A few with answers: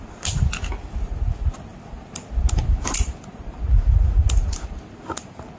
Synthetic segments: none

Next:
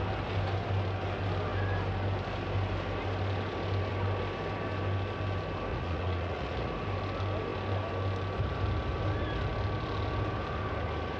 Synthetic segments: 5.7-6.7 (vocoder, Vocos)

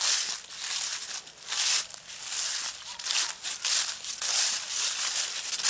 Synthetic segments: none

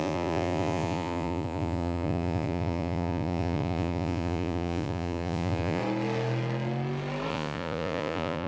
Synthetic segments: 0.0-5.8 (vocoder, Vocos); 7.3-8.5